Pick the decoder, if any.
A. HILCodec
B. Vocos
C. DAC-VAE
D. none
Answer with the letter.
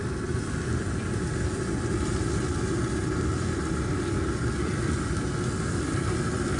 D